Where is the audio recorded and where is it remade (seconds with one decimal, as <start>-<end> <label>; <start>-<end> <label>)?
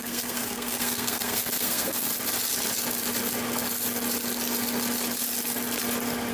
0.0-2.1 remade; 2.1-6.3 recorded